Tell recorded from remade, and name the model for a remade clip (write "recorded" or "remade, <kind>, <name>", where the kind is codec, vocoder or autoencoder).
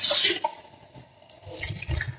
recorded